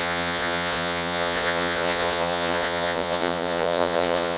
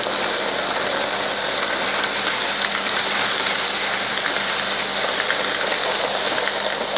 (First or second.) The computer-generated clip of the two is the first